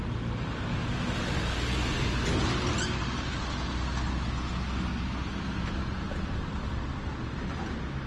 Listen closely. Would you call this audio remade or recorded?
recorded